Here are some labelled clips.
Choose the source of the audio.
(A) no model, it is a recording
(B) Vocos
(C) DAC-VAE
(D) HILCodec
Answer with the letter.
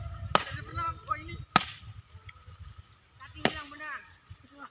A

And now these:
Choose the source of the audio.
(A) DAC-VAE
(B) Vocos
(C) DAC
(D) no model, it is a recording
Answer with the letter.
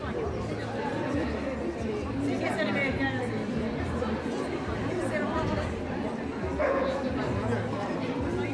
D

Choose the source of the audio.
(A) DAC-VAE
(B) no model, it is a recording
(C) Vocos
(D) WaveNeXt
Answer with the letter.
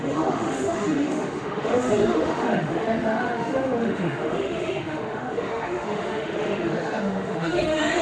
A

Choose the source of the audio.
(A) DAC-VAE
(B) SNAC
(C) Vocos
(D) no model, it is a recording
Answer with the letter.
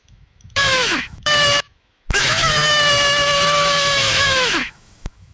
A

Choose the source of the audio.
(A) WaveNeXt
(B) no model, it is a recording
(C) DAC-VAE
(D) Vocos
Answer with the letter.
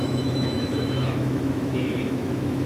C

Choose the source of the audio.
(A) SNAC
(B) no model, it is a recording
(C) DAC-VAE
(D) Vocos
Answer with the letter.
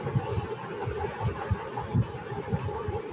B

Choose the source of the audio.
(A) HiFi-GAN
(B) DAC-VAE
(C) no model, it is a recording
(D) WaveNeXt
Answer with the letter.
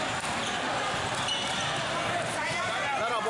C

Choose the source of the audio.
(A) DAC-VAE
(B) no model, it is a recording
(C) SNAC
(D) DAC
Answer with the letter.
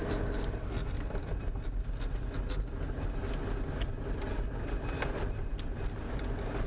B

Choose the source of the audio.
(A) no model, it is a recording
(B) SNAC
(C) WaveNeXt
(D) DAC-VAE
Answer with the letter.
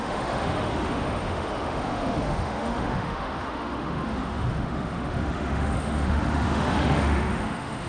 D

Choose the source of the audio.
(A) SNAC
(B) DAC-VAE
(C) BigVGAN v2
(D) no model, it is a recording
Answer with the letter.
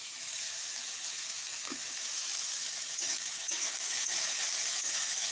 B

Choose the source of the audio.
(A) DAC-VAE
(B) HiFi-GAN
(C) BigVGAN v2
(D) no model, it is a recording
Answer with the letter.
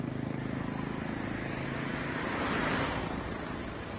D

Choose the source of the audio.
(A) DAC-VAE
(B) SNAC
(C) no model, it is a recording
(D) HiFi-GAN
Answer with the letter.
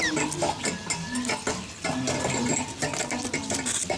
C